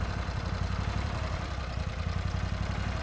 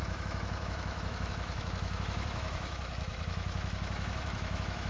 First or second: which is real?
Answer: first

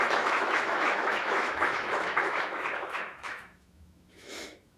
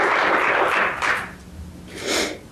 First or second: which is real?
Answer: second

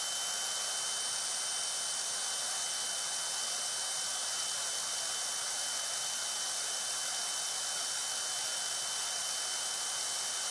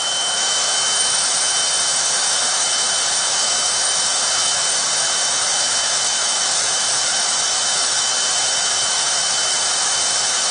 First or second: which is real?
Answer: first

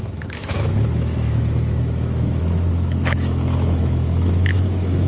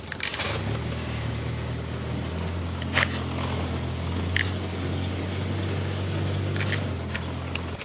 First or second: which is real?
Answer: second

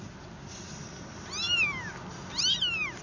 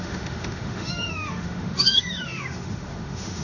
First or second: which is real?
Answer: first